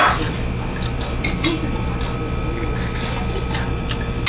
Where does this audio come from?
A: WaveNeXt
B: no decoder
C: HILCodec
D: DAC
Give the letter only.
B